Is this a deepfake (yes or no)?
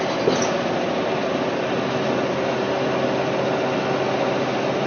no